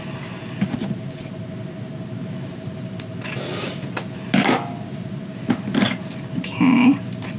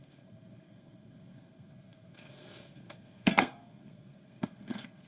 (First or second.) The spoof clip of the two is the second